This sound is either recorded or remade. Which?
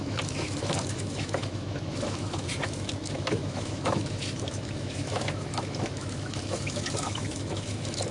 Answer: remade